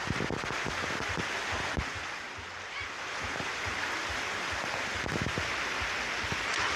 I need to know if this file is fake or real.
real